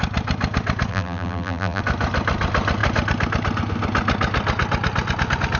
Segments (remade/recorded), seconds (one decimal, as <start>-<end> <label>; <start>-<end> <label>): 0.0-0.9 recorded; 0.9-1.8 remade; 1.8-5.6 recorded